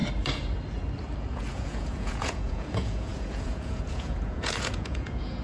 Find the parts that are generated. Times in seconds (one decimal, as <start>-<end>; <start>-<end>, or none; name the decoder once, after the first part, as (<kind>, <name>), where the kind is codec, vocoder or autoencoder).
1.2-5.4 (vocoder, Vocos)